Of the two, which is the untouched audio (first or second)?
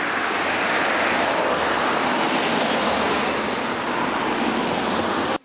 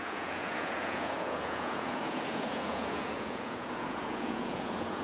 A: first